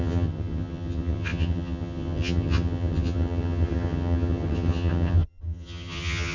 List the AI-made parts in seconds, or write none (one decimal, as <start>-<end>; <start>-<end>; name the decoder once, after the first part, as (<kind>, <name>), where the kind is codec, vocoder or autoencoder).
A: 0.0-6.3 (vocoder, HiFi-GAN)